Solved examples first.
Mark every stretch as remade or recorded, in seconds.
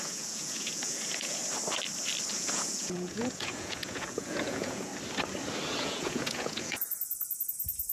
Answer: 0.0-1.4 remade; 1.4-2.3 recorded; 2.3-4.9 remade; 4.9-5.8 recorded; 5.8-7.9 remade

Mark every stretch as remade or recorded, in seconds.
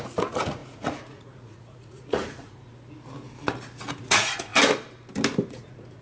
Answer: 0.0-2.7 remade; 2.7-4.0 recorded; 4.0-4.5 remade; 4.5-5.5 recorded; 5.5-6.0 remade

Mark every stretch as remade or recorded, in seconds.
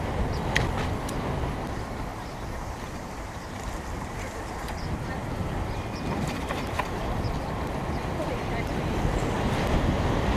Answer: 0.0-2.1 recorded; 2.1-4.2 remade; 4.2-10.4 recorded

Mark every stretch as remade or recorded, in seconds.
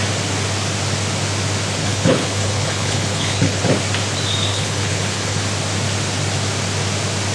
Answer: 0.0-1.8 recorded; 1.8-3.6 remade; 3.6-4.5 recorded; 4.5-5.4 remade; 5.4-7.3 recorded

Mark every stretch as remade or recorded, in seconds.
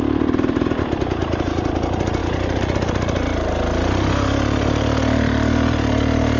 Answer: 0.0-6.4 recorded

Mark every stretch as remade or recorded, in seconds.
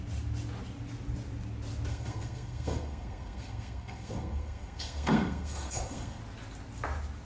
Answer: 0.0-1.9 recorded; 1.9-6.2 remade; 6.2-7.2 recorded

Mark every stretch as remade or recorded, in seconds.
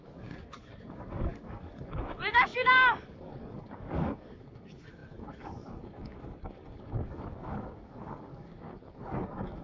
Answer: 0.0-9.6 remade